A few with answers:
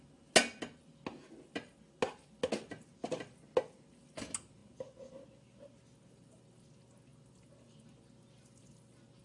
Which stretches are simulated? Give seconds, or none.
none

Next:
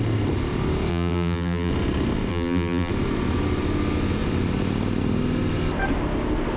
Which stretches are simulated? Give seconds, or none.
0.9-1.7 (vocoder, BigVGAN v2); 2.3-2.9

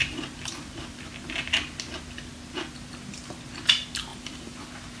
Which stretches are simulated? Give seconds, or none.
4.1-5.0 (vocoder, BigVGAN v2)

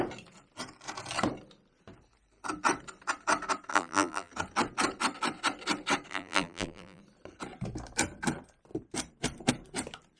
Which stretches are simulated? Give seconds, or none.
3.7-4.3 (vocoder, BigVGAN v2); 6.1-7.0